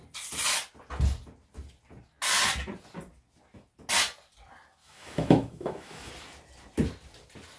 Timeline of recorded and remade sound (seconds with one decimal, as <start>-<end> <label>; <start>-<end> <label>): 0.0-4.8 recorded; 4.8-6.1 remade; 6.1-7.6 recorded